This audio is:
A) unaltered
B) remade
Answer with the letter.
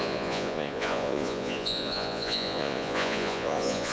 B